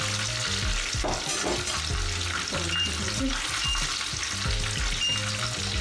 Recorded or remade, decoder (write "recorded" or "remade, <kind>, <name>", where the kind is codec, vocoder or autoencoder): recorded